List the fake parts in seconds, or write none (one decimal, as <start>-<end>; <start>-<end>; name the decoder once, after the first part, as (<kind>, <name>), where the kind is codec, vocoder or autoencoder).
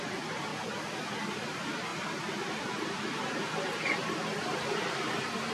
0.0-0.5 (vocoder, BigVGAN v2); 1.2-5.5